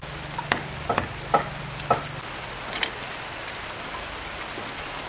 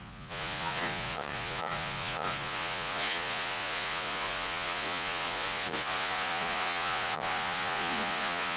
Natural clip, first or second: first